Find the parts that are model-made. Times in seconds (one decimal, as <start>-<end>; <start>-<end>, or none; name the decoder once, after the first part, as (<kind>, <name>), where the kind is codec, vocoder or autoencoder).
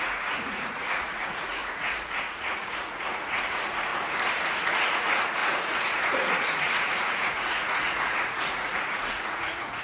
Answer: 0.0-3.9 (vocoder, Vocos); 4.6-9.8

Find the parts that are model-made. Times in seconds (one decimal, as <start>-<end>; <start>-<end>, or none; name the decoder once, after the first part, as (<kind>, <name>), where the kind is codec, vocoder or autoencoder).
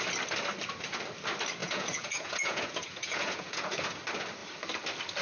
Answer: 1.6-4.0 (vocoder, Vocos)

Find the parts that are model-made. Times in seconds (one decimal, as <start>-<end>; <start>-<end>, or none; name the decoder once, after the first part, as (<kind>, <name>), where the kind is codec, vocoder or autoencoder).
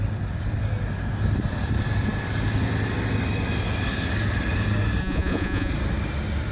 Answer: 5.0-5.7 (vocoder, Vocos)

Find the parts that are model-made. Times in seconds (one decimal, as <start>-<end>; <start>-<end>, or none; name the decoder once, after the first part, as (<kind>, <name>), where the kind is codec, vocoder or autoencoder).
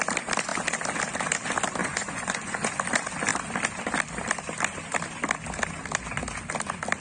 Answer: 1.8-2.7 (vocoder, Vocos)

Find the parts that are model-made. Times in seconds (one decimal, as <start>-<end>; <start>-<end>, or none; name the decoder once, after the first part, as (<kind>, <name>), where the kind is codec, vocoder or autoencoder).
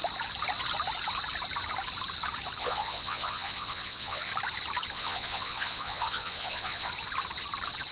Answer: 2.6-4.3 (vocoder, Vocos); 4.9-6.9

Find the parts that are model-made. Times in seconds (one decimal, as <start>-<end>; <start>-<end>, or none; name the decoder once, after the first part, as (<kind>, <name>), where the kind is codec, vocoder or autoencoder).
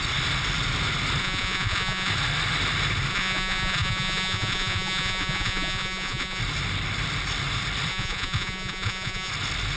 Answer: 1.2-2.1 (vocoder, Vocos); 3.1-6.4; 7.9-9.3